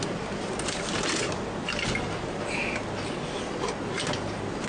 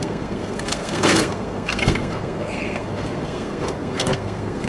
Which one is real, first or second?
first